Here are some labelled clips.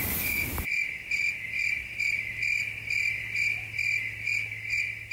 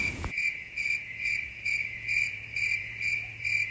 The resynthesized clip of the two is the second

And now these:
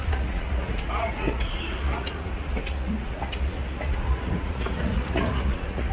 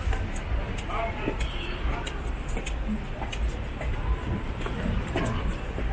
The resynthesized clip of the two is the first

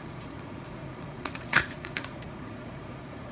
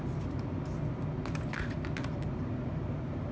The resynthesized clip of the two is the first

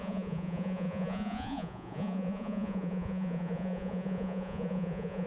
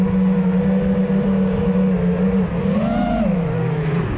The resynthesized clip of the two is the first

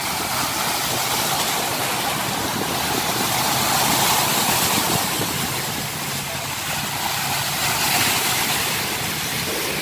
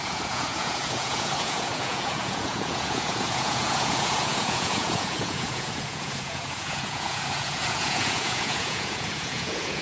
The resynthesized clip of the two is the second